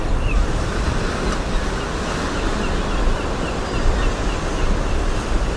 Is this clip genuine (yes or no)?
yes